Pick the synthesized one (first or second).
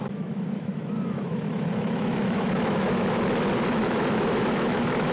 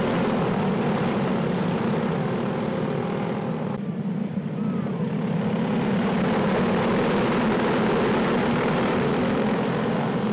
first